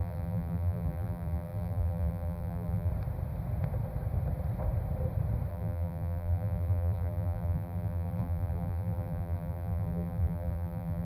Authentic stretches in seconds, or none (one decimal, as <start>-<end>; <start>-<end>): 2.9-5.5